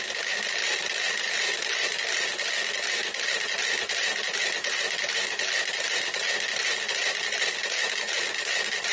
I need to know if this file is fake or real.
real